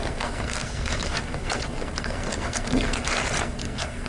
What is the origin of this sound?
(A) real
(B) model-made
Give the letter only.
B